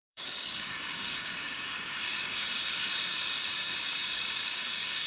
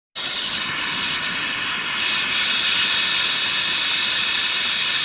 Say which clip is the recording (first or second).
second